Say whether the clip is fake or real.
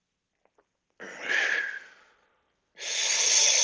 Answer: real